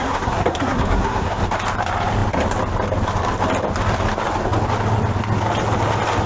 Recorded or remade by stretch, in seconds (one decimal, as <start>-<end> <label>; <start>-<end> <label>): 0.0-1.4 remade; 1.4-6.3 recorded